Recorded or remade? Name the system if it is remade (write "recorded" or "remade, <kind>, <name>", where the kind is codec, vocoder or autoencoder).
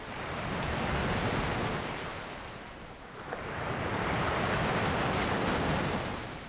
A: remade, vocoder, BigVGAN v2